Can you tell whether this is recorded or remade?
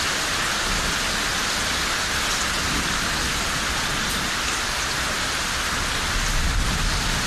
recorded